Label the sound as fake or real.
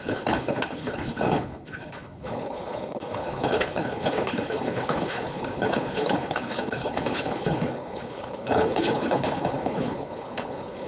fake